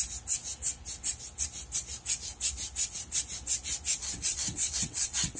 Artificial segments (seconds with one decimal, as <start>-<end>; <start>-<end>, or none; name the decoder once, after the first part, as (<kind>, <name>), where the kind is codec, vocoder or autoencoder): 4.0-5.4 (vocoder, WaveNeXt)